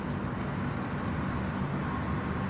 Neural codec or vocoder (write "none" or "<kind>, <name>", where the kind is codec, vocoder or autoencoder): none